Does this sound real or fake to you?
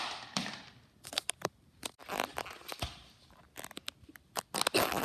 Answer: real